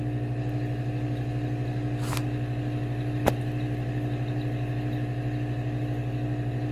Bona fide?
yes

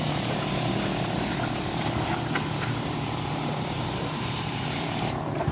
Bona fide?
no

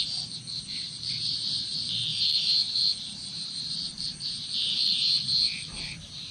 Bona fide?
no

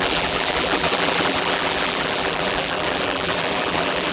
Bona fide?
no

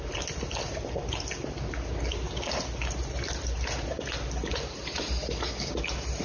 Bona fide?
yes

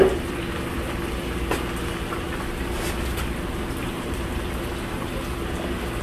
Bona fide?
yes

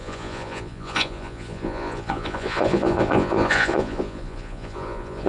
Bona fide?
no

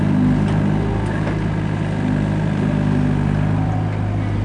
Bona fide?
yes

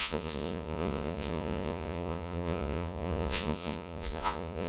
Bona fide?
no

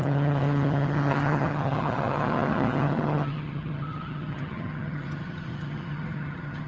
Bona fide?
no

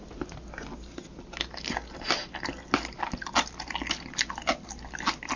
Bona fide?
yes